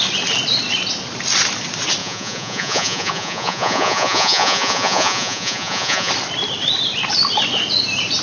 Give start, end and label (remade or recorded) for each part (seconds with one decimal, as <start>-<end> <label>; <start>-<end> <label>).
0.0-2.0 recorded; 2.0-6.1 remade; 6.1-8.2 recorded